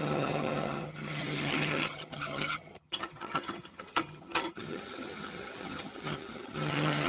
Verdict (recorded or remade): remade